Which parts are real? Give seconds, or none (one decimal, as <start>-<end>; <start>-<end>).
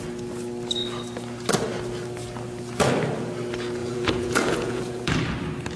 0.0-3.8; 5.1-5.8